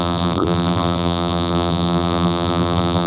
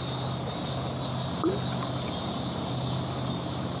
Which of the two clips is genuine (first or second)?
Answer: second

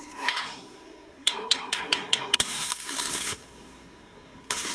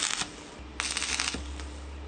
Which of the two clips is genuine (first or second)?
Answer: second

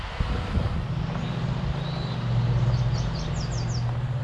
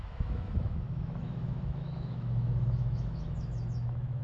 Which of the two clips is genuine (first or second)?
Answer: first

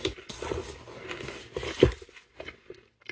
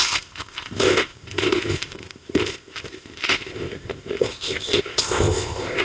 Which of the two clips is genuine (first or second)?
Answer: first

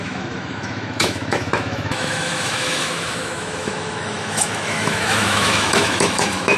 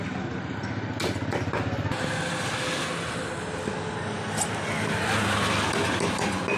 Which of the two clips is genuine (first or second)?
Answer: second